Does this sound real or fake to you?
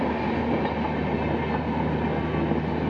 real